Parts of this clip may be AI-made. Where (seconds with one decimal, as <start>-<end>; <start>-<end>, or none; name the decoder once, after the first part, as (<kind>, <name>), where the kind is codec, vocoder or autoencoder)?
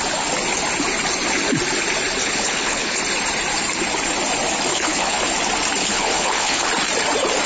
2.2-3.0 (codec, HILCodec); 4.7-5.2; 5.8-6.7